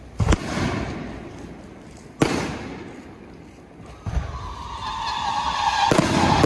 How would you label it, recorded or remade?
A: recorded